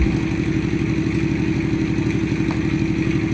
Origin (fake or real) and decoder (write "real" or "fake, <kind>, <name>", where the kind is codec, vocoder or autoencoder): real